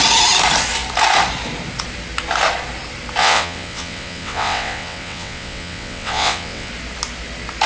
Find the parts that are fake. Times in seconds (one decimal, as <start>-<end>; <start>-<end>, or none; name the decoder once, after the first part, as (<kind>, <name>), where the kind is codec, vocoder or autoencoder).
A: 3.2-6.7 (vocoder, WaveNeXt)